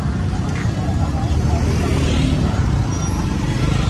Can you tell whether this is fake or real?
real